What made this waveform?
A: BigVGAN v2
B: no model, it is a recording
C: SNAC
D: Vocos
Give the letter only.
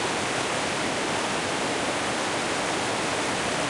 B